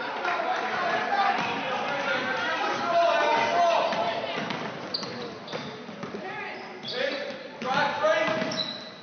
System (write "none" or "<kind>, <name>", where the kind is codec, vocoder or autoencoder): none